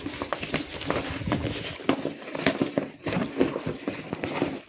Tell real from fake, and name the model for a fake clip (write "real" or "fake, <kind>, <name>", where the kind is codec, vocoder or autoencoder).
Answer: real